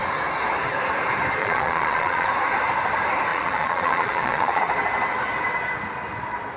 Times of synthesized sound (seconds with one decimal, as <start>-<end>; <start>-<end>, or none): 1.4-2.3; 3.3-4.6